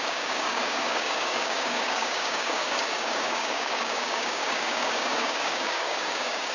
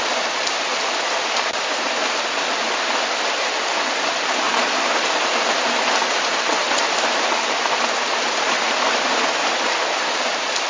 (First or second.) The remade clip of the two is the first